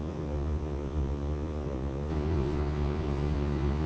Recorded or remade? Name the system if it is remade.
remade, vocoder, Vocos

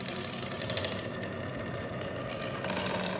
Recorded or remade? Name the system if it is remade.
recorded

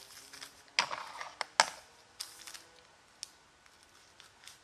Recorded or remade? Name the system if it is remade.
recorded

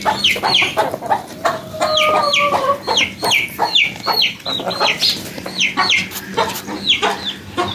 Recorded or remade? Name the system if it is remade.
recorded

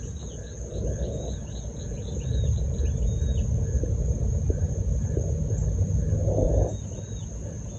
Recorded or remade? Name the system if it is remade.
recorded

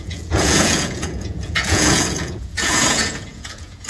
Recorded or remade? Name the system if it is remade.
remade, vocoder, Vocos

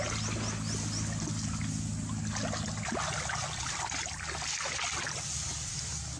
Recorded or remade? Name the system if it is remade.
recorded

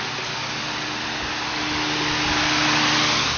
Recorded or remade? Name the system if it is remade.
recorded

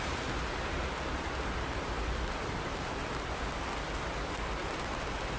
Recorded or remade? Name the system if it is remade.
recorded